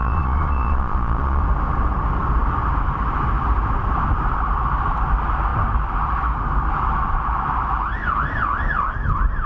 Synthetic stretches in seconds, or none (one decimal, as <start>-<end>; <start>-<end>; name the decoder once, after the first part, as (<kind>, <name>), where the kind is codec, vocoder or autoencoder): 0.0-1.4 (vocoder, Vocos)